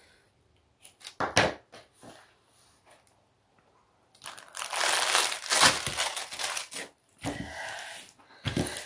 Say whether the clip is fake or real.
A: real